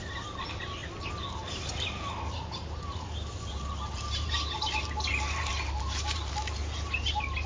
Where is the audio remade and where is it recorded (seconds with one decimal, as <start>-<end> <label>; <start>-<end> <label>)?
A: 0.0-0.8 remade; 0.8-1.4 recorded; 1.4-6.6 remade; 6.6-7.5 recorded